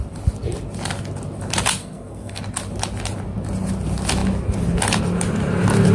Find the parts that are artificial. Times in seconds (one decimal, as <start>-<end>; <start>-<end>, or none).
1.8-2.4